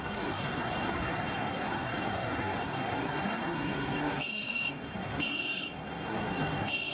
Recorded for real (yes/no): no